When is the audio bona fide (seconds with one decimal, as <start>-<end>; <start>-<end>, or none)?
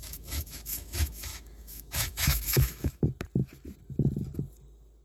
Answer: 3.0-5.0